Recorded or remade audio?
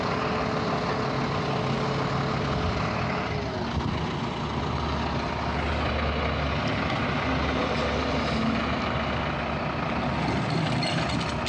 recorded